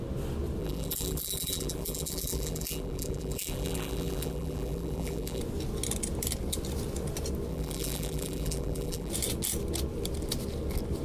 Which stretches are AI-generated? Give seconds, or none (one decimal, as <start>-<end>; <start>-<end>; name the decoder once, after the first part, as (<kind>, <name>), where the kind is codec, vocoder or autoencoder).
0.6-5.4 (vocoder, BigVGAN v2); 7.5-9.1